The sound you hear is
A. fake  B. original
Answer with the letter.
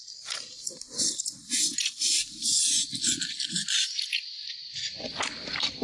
B